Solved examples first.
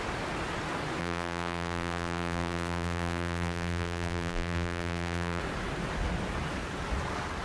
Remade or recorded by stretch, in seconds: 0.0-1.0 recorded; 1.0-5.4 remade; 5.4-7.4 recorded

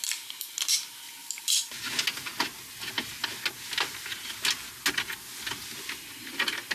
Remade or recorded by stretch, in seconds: 0.0-1.2 recorded; 1.2-1.7 remade; 1.7-6.7 recorded

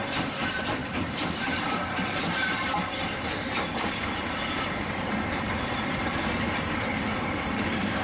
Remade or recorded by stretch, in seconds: 0.0-8.0 remade

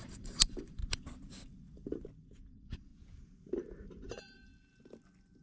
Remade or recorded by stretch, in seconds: 0.0-0.8 remade; 0.8-2.5 recorded; 2.5-2.9 remade; 2.9-4.1 recorded; 4.1-4.5 remade; 4.5-5.4 recorded

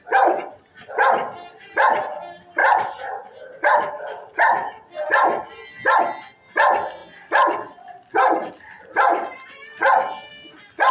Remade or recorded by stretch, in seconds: 0.0-10.9 recorded

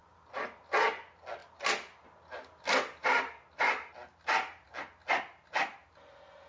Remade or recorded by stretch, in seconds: 0.0-0.6 remade; 0.6-5.6 recorded; 5.6-6.5 remade